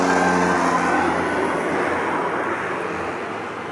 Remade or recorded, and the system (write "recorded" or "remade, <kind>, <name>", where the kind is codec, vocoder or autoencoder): recorded